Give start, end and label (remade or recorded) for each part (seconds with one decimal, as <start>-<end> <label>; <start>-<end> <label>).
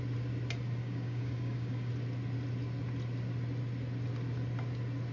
0.0-0.8 recorded; 0.8-1.9 remade; 1.9-5.1 recorded